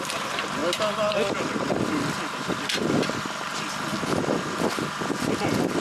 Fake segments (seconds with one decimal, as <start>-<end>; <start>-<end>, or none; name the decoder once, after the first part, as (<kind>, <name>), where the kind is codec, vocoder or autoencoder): none